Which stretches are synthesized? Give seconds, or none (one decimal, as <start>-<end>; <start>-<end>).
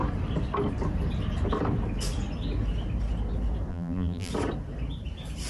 3.7-4.3